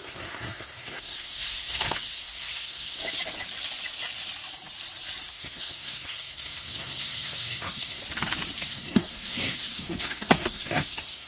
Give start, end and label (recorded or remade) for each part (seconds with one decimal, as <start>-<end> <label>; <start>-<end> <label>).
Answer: 0.0-3.0 remade; 3.0-5.3 recorded; 5.3-8.0 remade; 8.0-8.6 recorded; 8.6-11.3 remade

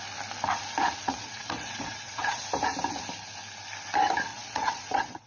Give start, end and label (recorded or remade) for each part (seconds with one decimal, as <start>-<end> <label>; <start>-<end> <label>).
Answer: 0.0-1.0 recorded; 1.0-2.4 remade; 2.4-4.3 recorded; 4.3-5.3 remade

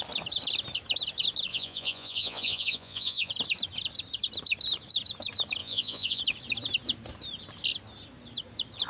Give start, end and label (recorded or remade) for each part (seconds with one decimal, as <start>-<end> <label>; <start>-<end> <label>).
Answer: 0.0-1.5 recorded; 1.5-3.3 remade; 3.3-5.6 recorded; 5.6-6.2 remade; 6.2-8.9 recorded

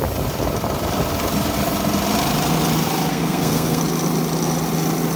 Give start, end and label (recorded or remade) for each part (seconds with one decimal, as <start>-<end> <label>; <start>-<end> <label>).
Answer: 0.0-3.1 recorded; 3.1-3.8 remade; 3.8-5.2 recorded